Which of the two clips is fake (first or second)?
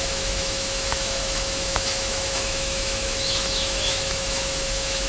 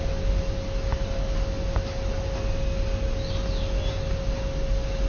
first